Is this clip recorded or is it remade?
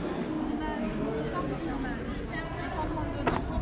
recorded